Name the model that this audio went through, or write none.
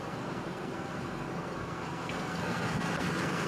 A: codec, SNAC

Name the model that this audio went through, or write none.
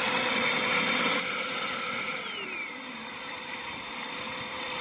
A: none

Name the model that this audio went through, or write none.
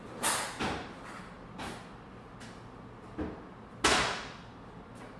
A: none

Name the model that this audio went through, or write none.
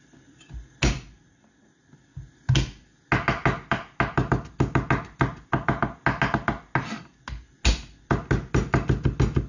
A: none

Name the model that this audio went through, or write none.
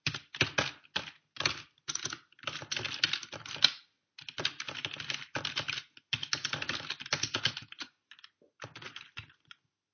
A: none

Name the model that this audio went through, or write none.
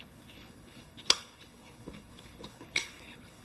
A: codec, HILCodec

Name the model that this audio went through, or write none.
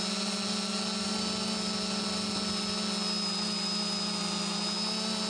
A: none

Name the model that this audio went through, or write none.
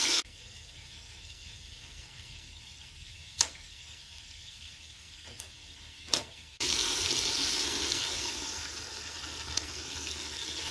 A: codec, SNAC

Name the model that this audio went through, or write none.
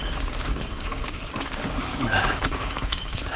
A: codec, DAC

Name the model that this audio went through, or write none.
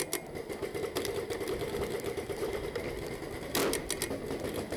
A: none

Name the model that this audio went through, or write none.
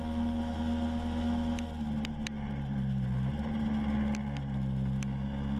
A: none